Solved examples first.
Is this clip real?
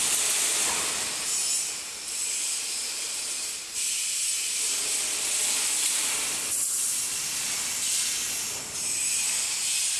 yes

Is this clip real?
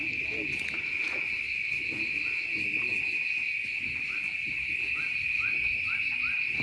yes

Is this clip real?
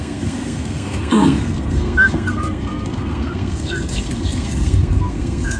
no